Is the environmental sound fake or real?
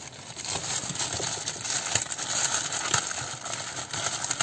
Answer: real